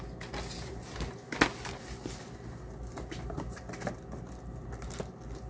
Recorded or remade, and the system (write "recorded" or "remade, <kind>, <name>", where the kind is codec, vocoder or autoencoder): recorded